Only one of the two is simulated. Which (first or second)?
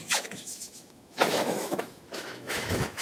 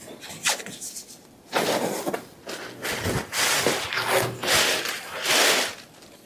first